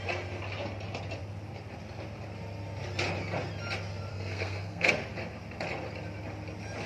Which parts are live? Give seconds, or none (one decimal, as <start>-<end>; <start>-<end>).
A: 0.0-4.1; 4.9-6.9